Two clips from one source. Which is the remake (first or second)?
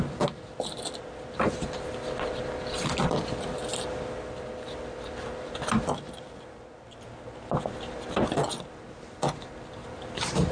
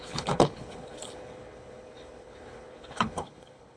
second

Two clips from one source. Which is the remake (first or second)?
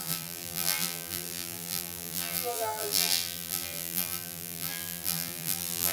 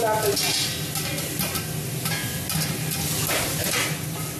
first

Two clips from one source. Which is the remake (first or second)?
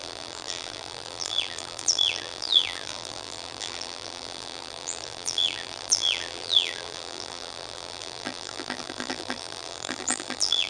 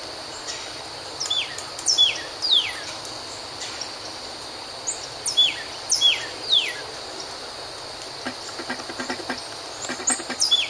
first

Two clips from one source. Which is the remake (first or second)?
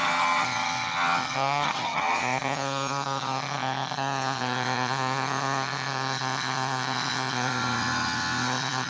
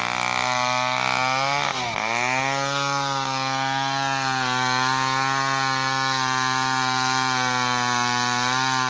first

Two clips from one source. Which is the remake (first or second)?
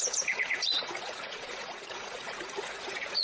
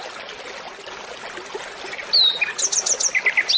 first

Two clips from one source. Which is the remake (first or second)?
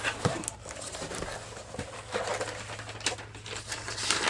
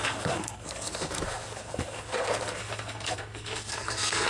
second